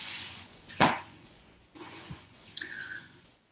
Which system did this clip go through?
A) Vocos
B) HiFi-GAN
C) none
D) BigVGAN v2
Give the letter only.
A